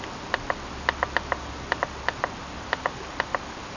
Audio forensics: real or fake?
real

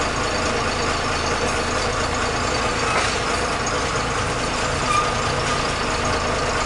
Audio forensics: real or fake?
real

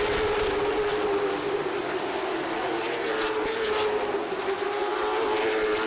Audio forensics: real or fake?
real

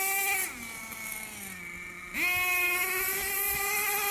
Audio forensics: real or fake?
real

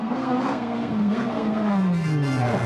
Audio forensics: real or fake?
fake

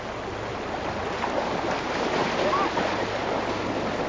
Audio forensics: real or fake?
real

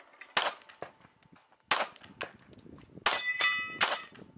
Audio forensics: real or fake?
real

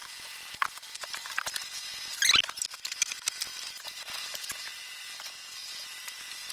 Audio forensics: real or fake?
real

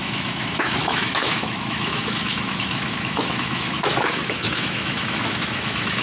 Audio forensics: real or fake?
fake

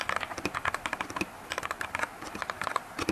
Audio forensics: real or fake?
real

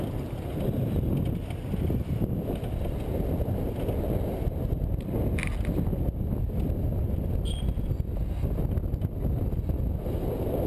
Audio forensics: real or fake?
real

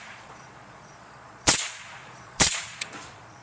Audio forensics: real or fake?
fake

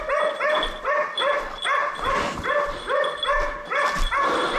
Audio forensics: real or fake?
real